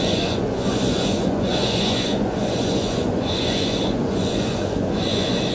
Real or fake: fake